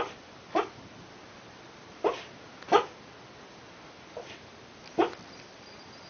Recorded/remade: recorded